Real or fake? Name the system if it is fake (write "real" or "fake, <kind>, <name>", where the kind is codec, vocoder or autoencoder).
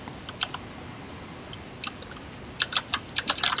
real